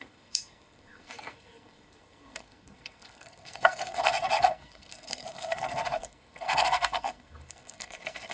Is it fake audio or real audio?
fake